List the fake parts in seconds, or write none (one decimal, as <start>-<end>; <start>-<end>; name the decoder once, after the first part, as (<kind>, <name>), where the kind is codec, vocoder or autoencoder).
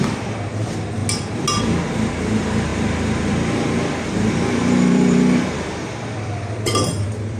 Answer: 0.0-1.0 (vocoder, BigVGAN v2); 1.6-7.4